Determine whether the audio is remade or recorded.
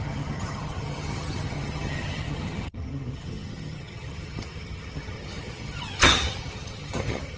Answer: remade